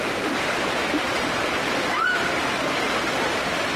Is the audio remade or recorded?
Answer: remade